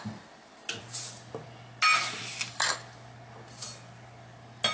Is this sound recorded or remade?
recorded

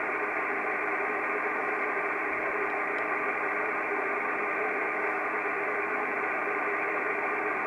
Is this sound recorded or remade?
remade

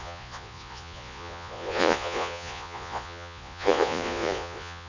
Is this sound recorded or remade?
remade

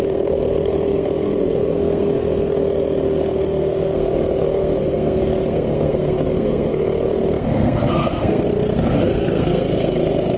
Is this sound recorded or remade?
remade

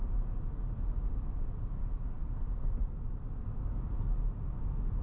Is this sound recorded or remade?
recorded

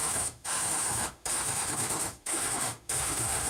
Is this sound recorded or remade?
remade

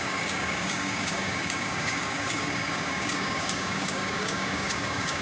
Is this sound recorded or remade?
remade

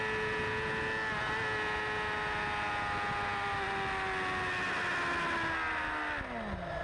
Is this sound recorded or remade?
recorded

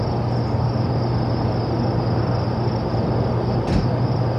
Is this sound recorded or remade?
recorded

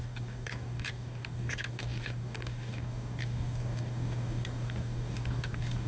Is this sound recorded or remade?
remade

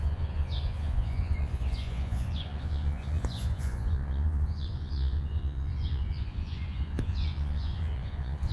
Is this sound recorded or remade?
remade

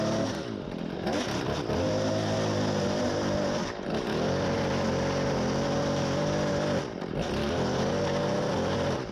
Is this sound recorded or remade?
recorded